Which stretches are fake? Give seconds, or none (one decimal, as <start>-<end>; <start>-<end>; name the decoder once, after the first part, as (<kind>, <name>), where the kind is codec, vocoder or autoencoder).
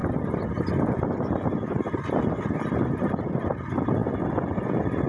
0.0-3.1 (vocoder, BigVGAN v2)